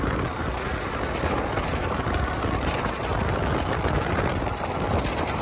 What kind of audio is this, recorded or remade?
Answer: recorded